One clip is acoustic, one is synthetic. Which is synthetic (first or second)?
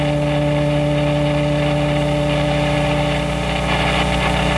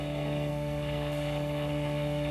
second